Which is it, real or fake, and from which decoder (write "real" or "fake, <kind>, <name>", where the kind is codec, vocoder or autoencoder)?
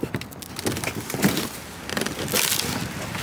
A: real